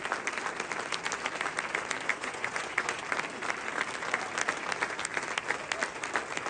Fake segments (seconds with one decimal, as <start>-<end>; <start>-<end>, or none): 2.1-3.0